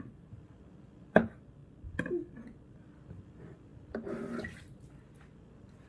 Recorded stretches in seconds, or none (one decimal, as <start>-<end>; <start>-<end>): 0.0-5.9